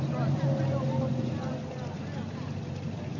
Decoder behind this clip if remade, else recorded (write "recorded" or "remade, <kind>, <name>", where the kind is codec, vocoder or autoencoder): recorded